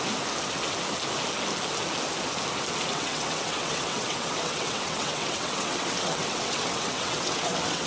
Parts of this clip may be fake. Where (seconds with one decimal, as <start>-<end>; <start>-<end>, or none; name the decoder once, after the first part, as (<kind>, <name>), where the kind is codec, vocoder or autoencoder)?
2.9-7.9 (vocoder, WaveNeXt)